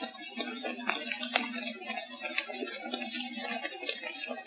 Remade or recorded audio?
recorded